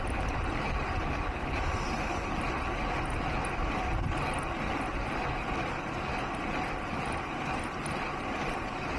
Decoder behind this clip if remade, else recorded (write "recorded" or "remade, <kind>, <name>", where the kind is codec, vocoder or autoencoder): recorded